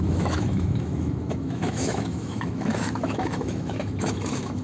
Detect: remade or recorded remade